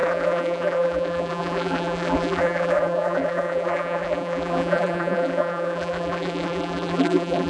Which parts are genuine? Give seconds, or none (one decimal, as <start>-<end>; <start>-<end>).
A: none